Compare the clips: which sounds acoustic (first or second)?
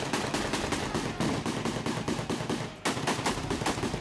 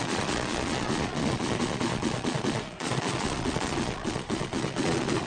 first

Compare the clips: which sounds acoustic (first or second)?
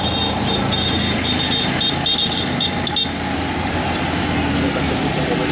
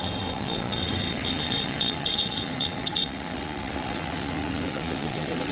first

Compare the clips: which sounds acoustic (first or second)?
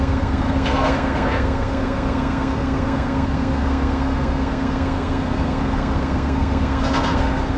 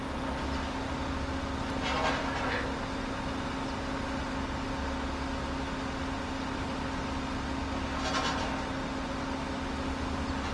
second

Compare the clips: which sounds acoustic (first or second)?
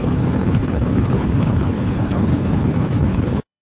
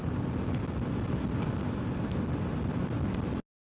second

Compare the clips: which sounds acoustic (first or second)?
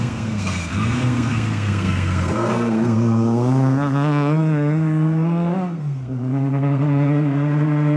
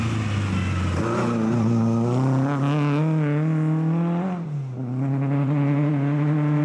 second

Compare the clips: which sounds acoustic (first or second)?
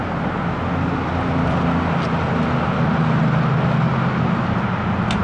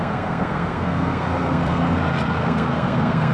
first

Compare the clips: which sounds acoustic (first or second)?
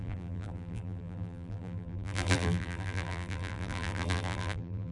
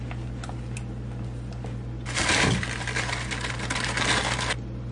second